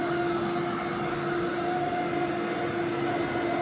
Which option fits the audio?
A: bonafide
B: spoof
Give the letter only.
A